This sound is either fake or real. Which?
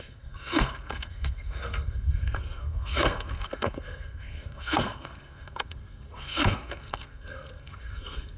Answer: fake